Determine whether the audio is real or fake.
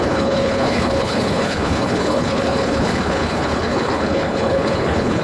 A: fake